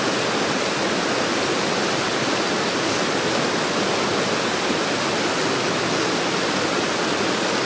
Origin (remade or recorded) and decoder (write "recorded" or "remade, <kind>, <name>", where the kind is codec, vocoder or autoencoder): recorded